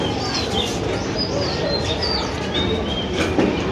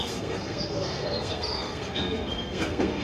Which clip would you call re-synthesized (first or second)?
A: second